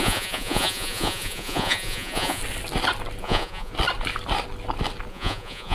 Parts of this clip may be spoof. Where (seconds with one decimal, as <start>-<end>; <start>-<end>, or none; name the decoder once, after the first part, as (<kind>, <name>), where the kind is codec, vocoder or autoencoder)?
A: 0.0-2.4 (vocoder, Vocos); 3.2-3.7; 5.1-5.7